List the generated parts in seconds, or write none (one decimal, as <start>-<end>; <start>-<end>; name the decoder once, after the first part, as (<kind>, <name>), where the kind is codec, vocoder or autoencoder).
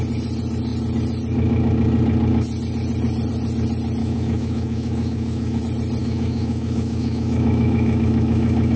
4.0-5.6 (autoencoder, DAC-VAE); 6.0-8.8